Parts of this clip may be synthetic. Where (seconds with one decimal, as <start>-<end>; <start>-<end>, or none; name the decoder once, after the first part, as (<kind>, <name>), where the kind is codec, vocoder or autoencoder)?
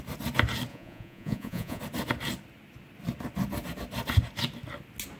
0.7-1.8 (vocoder, Vocos)